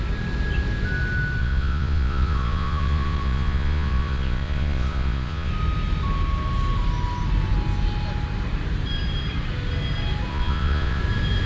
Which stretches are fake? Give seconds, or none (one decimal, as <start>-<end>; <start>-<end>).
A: 1.4-5.5; 10.3-11.0